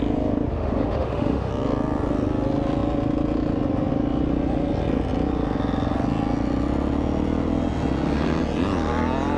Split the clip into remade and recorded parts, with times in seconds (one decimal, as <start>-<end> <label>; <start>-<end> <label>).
0.0-0.5 recorded; 0.5-1.5 remade; 1.5-9.4 recorded